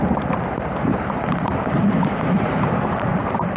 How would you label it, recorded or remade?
recorded